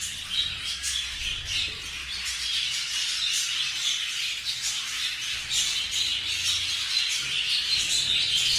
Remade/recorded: recorded